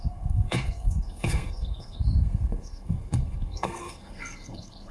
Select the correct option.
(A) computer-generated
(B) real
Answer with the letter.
A